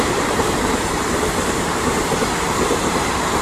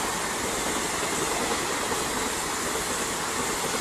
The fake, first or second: first